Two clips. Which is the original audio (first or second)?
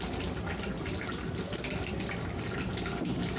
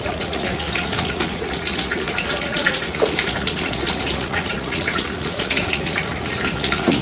first